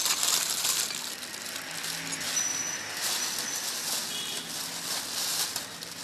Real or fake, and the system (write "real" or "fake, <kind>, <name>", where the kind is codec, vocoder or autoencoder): real